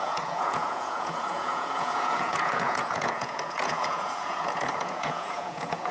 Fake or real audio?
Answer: fake